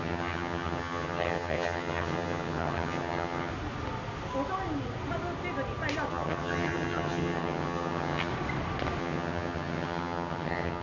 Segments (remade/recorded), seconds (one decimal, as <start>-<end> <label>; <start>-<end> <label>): 0.0-3.5 remade; 3.5-6.1 recorded; 6.1-8.3 remade; 8.3-9.0 recorded; 9.0-10.8 remade